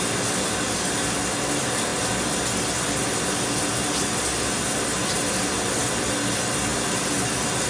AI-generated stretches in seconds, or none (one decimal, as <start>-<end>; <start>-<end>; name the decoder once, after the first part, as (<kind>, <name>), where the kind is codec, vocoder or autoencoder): none